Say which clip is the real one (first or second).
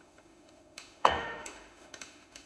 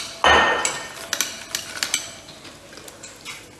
second